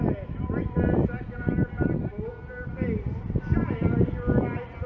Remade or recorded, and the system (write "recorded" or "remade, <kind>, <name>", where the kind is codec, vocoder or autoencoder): recorded